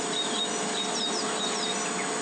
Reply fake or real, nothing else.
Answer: real